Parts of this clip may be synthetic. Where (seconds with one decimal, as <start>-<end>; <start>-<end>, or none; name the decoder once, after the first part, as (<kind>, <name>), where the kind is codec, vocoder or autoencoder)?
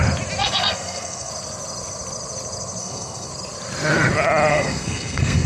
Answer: 0.4-1.3 (codec, SNAC); 2.8-3.3; 4.5-5.5